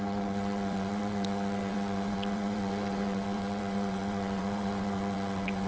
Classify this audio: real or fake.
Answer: fake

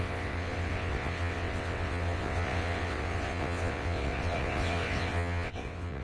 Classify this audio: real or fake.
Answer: fake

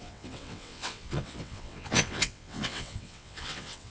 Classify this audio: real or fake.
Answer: fake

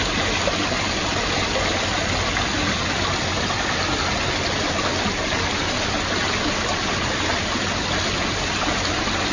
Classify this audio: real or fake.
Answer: real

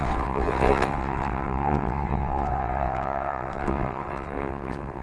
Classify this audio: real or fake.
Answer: fake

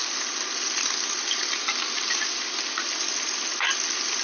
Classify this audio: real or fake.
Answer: real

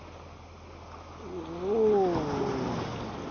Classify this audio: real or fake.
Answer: real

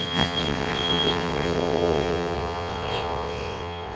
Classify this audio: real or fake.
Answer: fake